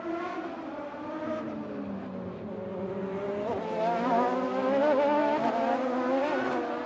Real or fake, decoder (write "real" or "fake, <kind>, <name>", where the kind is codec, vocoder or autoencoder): real